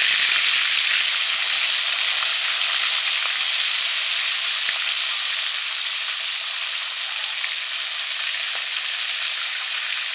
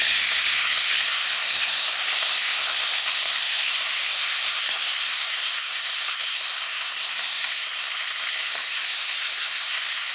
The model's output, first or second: second